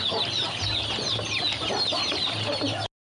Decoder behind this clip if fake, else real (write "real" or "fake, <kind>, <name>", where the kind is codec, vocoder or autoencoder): real